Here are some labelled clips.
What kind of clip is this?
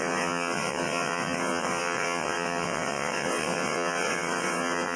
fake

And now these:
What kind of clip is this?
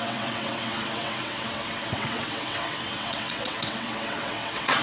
fake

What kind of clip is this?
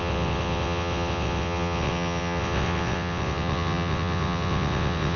fake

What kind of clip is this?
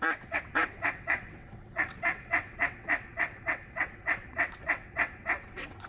fake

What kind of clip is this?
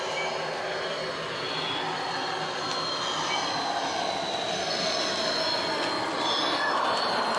real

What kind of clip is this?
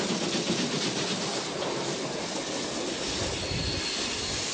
real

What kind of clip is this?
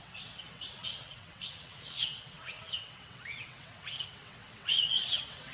fake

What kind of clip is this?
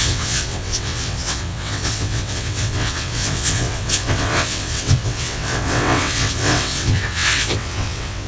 fake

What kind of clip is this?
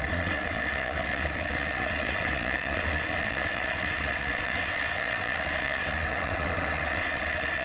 fake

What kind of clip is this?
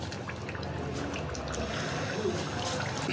real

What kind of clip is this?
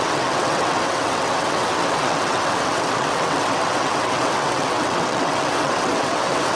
fake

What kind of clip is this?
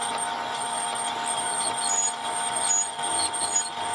real